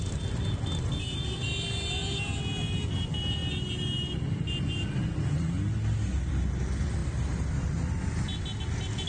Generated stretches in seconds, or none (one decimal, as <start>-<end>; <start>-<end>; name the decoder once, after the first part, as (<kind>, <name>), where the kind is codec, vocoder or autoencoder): none